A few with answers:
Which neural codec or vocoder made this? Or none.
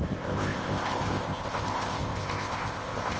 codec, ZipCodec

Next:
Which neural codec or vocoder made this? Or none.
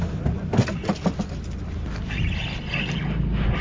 none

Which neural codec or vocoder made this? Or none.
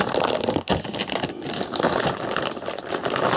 none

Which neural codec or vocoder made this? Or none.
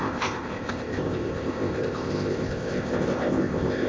codec, ZipCodec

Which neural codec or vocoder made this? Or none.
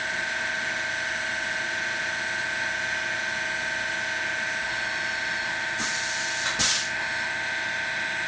none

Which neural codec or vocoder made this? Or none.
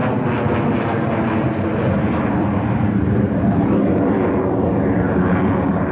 none